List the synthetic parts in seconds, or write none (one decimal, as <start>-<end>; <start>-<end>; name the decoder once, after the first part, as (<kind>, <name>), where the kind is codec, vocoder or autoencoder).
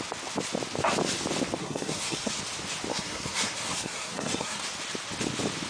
1.6-2.4 (codec, SNAC); 2.9-4.6